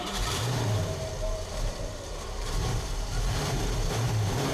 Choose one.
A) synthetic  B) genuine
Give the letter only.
A